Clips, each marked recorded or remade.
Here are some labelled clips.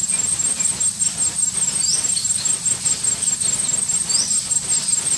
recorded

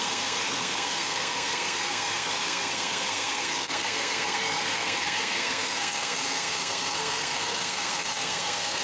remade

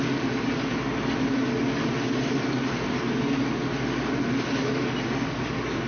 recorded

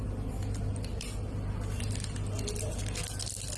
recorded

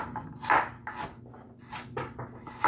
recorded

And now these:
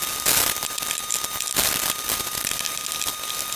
recorded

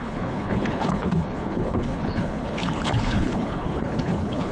remade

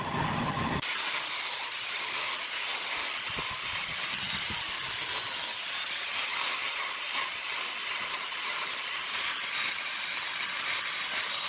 recorded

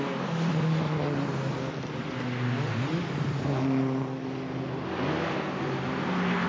recorded